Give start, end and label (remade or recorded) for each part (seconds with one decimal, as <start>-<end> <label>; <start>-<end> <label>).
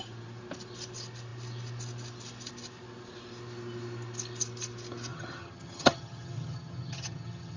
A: 0.0-5.1 recorded; 5.1-7.6 remade